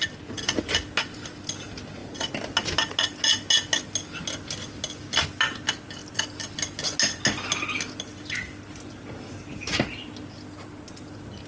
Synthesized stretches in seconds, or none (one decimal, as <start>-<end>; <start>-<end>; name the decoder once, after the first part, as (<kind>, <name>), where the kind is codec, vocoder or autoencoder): none